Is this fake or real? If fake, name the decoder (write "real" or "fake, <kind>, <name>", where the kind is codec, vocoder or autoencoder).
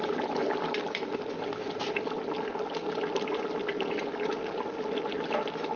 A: real